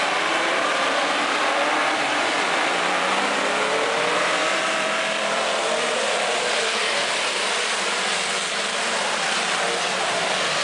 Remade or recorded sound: remade